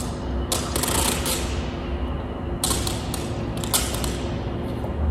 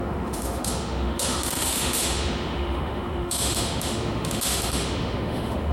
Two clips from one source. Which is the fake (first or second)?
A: second